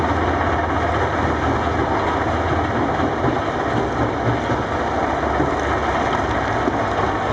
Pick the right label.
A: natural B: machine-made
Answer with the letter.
A